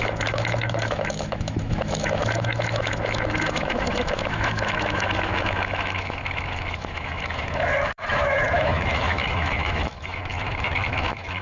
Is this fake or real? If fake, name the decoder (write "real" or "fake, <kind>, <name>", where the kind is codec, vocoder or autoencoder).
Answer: fake, autoencoder, DAC-VAE